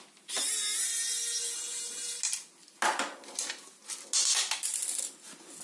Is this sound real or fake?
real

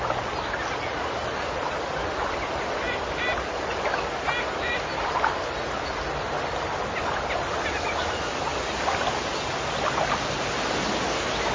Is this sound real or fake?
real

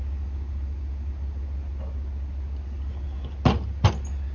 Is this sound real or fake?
real